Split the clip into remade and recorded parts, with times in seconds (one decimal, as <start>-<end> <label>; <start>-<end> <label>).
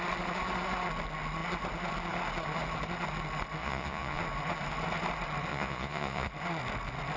0.0-3.6 recorded; 3.6-4.2 remade; 4.2-5.5 recorded; 5.5-6.3 remade; 6.3-7.2 recorded